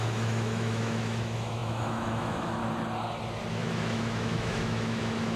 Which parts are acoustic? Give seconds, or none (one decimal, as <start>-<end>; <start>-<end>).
2.6-3.5

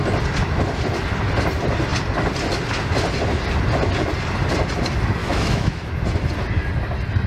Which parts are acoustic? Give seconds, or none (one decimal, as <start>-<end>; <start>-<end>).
0.0-5.2; 5.9-7.3